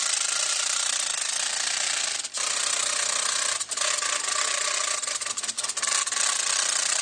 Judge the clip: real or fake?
real